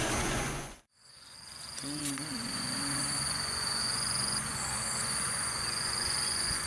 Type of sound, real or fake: fake